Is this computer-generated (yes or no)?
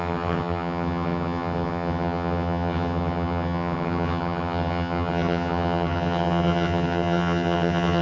yes